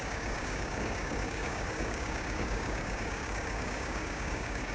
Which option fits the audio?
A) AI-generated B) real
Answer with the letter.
A